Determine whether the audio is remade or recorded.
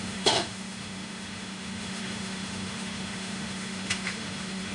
remade